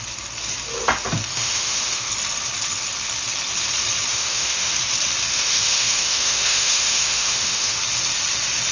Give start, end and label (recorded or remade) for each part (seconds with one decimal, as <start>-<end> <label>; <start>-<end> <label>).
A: 0.0-1.3 recorded; 1.3-2.1 remade; 2.1-4.1 recorded; 4.1-4.7 remade; 4.7-5.3 recorded; 5.3-7.8 remade; 7.8-8.7 recorded